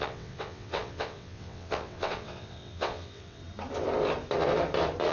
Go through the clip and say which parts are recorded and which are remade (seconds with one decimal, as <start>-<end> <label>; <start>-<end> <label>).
0.0-3.4 remade; 3.4-5.1 recorded